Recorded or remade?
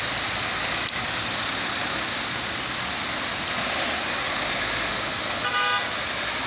recorded